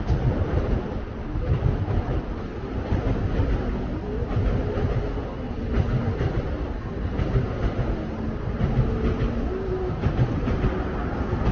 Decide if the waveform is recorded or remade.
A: recorded